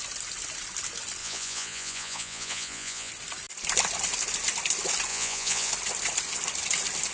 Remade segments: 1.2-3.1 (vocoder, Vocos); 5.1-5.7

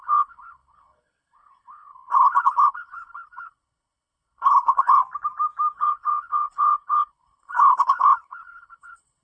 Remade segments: 0.0-5.0 (codec, HILCodec); 5.8-9.2

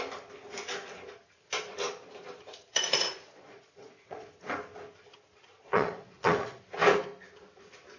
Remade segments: 2.7-4.3 (vocoder, Vocos); 5.6-6.6

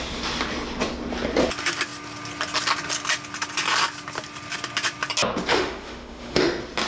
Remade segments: 5.5-6.4 (autoencoder, DAC-VAE)

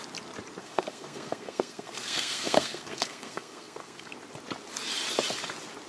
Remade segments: 0.6-4.1 (codec, SNAC)

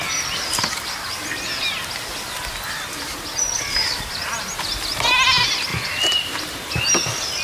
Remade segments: 5.7-6.8 (vocoder, BigVGAN v2)